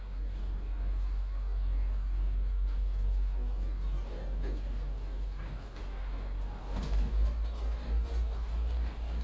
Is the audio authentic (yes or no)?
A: no